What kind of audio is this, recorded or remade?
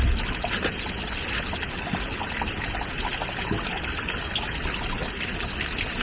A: recorded